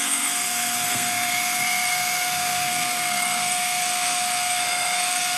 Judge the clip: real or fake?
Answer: fake